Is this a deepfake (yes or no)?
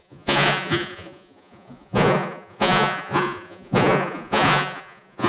yes